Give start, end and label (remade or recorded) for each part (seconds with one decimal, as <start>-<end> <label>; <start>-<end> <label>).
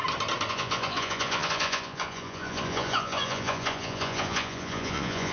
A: 0.0-0.5 recorded; 0.5-5.3 remade